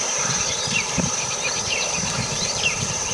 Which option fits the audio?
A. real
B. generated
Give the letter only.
B